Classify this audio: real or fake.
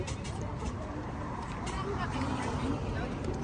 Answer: fake